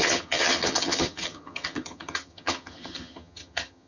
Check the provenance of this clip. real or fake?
fake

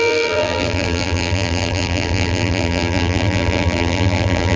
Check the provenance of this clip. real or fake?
fake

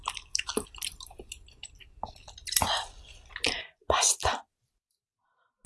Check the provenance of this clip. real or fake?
real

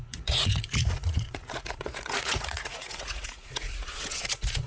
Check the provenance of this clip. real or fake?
fake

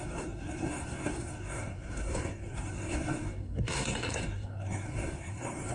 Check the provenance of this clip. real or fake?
fake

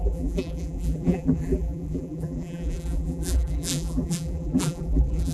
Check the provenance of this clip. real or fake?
fake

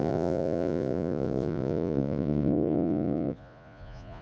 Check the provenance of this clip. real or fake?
fake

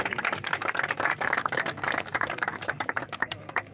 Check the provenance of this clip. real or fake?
fake